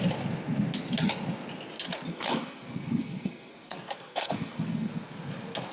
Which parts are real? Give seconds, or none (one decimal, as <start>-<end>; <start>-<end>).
0.0-2.1; 4.9-5.7